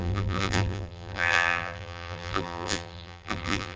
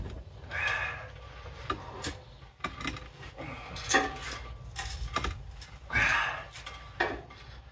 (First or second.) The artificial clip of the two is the first